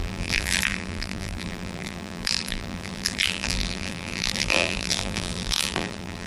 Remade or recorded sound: remade